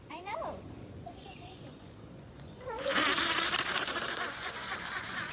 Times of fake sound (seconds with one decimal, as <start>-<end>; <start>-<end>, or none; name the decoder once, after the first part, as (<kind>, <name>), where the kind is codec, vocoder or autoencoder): 0.0-3.0 (vocoder, Vocos); 3.8-5.3